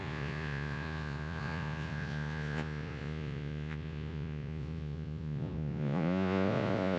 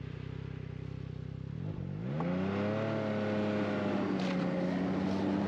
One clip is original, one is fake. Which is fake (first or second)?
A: first